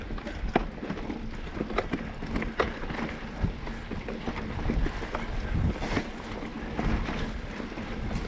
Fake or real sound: real